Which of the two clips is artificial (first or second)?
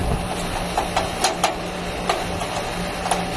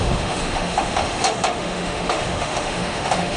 second